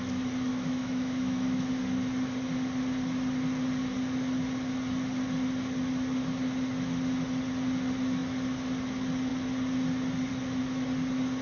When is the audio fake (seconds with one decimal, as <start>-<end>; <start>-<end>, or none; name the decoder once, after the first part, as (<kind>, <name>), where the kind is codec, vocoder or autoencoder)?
0.5-1.7 (autoencoder, DAC-VAE)